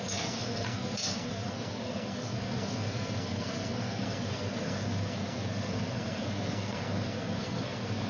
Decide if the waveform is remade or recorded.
remade